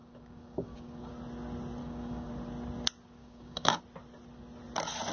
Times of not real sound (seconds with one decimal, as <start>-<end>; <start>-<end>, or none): 0.0-1.1; 1.8-2.3; 3.2-3.8